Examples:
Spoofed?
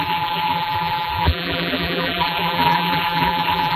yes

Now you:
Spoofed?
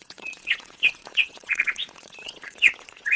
yes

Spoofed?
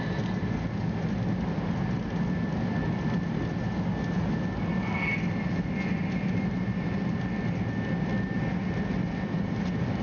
no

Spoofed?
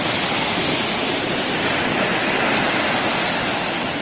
no